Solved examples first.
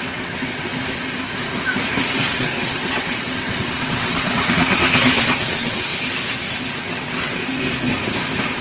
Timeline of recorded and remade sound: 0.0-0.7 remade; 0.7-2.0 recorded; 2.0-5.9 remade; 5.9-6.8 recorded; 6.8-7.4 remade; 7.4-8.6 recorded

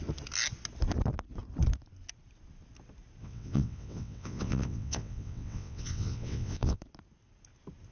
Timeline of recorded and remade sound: 0.0-3.2 recorded; 3.2-6.8 remade; 6.8-7.9 recorded

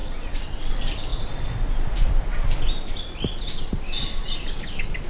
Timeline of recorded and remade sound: 0.0-0.7 remade; 0.7-5.1 recorded

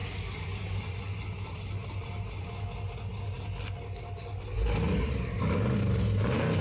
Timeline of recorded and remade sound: 0.0-6.6 recorded